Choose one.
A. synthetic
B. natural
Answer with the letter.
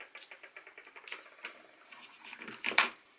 B